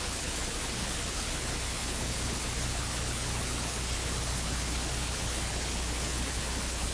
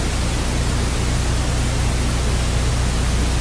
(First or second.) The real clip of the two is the second